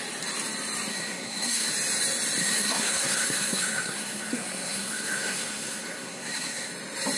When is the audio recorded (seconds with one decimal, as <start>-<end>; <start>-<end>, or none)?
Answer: 0.0-0.9; 1.7-2.4; 6.7-7.2